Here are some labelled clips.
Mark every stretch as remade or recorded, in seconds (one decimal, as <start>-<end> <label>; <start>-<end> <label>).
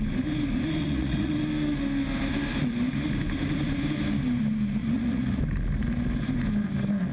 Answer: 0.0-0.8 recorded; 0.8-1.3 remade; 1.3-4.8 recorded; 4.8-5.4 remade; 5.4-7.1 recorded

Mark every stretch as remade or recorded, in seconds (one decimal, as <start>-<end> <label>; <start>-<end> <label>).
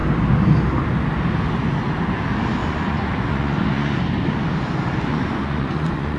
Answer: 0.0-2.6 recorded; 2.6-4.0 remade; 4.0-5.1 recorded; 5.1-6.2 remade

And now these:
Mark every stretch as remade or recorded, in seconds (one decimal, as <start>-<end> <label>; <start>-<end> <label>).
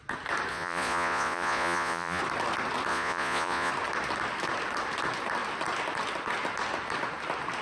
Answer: 0.0-0.5 recorded; 0.5-2.2 remade; 2.2-2.9 recorded; 2.9-3.7 remade; 3.7-7.6 recorded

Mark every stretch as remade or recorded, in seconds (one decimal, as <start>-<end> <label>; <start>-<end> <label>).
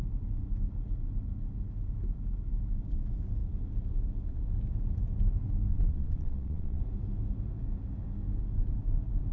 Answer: 0.0-5.7 recorded; 5.7-6.8 remade; 6.8-9.3 recorded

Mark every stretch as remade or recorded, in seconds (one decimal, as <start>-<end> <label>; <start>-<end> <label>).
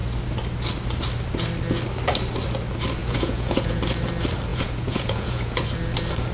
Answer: 0.0-3.0 recorded; 3.0-3.8 remade; 3.8-4.5 recorded; 4.5-5.6 remade; 5.6-6.3 recorded